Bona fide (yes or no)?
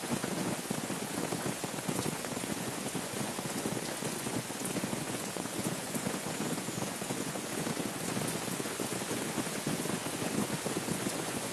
no